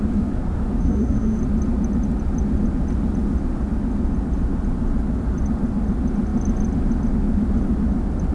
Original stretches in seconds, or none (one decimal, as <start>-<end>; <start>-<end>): 0.0-0.8; 1.4-8.3